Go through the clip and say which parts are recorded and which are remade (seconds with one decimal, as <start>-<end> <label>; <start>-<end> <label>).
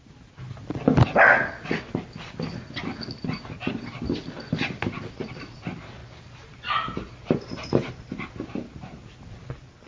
0.0-6.0 recorded; 6.0-7.9 remade; 7.9-9.9 recorded